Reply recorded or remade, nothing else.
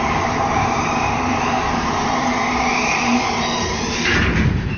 remade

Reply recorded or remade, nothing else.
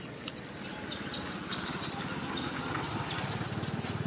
recorded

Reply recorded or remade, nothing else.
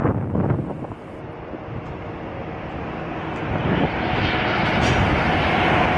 recorded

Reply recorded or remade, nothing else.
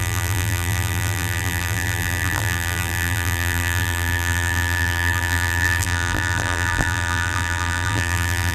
remade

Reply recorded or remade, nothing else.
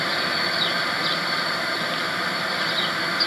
recorded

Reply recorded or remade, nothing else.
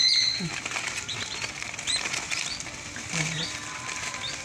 remade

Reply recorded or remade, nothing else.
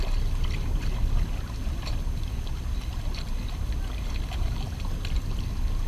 recorded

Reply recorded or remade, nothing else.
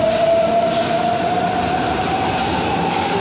recorded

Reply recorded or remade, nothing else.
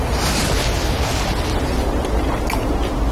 recorded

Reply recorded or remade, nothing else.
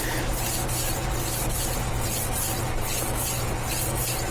remade